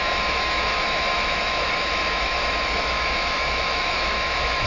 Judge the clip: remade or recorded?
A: remade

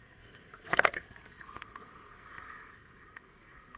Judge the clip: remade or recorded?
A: remade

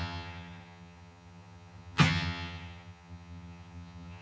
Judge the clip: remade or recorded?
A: remade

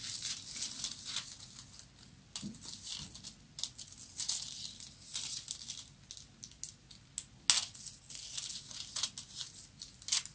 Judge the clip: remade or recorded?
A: recorded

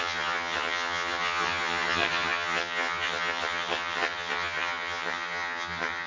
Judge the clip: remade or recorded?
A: remade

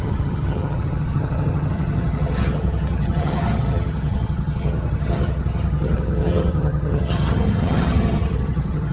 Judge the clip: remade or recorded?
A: remade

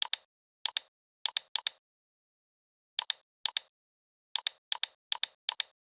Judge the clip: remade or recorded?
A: recorded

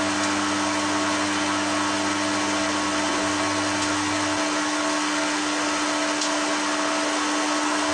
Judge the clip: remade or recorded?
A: recorded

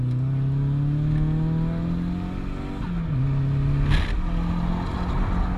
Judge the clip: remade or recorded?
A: recorded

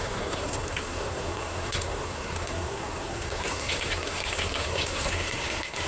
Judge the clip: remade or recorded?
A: remade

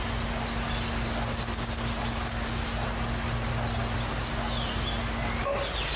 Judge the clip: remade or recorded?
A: recorded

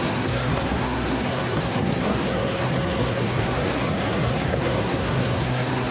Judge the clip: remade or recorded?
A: remade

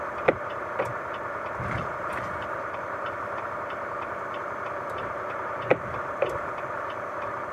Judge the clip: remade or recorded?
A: remade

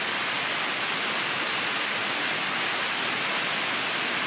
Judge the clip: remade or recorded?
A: recorded